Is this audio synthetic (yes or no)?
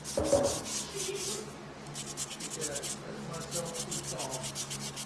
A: no